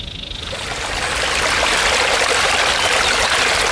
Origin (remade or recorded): recorded